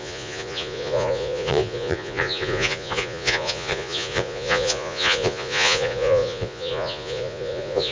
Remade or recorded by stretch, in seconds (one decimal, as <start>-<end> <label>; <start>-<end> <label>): 0.0-7.9 remade